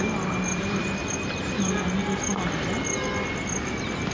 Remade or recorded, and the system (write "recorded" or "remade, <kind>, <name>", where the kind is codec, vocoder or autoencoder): recorded